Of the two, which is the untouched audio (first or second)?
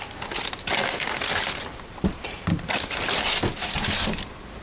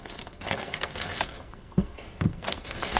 first